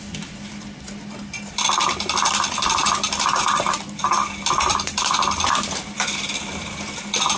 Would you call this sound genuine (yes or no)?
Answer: yes